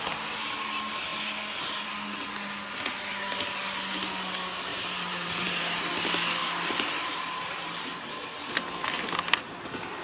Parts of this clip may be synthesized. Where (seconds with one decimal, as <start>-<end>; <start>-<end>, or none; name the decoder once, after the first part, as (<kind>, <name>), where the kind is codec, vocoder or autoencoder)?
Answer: 4.7-5.9 (vocoder, BigVGAN v2); 6.4-7.6